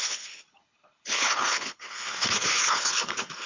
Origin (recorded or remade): remade